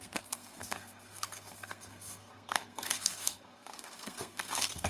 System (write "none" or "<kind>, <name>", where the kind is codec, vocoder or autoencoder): codec, SNAC